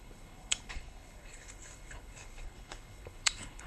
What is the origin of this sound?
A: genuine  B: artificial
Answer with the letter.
B